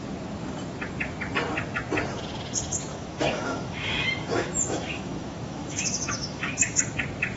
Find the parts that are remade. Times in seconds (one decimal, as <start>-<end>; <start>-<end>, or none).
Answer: 2.9-6.8